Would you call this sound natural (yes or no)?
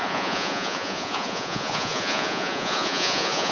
no